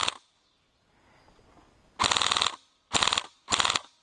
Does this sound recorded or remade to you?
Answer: recorded